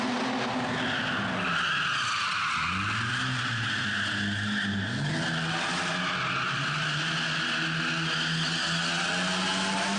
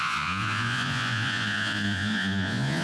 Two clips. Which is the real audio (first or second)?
first